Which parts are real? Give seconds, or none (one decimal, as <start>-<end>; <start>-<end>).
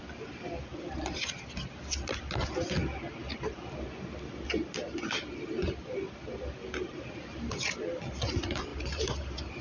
0.0-0.7; 2.2-8.7